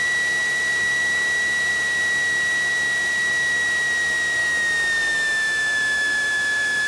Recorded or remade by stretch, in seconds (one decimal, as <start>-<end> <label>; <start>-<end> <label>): 0.0-4.4 recorded; 4.4-6.9 remade